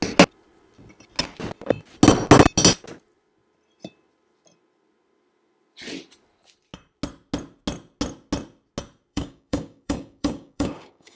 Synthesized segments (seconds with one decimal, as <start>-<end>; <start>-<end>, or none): 9.1-11.2